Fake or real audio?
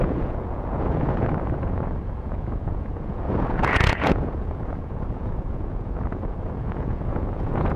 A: fake